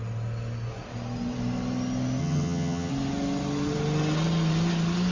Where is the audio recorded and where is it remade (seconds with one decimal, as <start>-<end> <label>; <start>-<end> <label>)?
0.0-2.2 recorded; 2.2-2.9 remade; 2.9-5.1 recorded